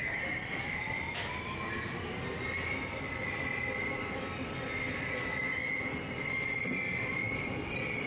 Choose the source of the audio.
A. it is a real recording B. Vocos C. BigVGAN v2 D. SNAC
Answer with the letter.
C